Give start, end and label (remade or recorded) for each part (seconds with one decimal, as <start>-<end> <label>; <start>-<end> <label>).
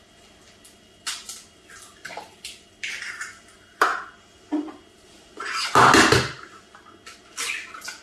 0.0-3.9 remade; 3.9-7.5 recorded; 7.5-8.0 remade